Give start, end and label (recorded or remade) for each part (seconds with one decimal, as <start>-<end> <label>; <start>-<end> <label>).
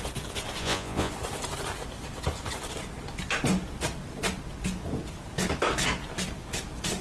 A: 0.0-0.6 recorded; 0.6-1.1 remade; 1.1-7.0 recorded